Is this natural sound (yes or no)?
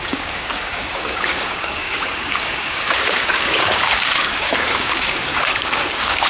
no